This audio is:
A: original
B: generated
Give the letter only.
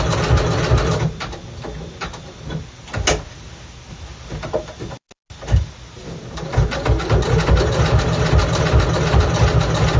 A